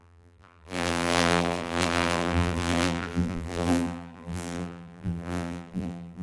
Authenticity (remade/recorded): remade